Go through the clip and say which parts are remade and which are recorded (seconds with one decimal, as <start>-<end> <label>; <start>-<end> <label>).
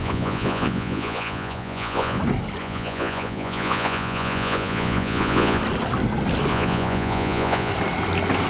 0.0-2.2 remade; 2.2-2.6 recorded; 2.6-5.6 remade; 5.6-6.5 recorded; 6.5-7.7 remade; 7.7-8.5 recorded